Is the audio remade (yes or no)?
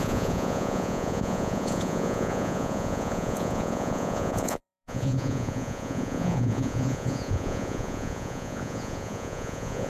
yes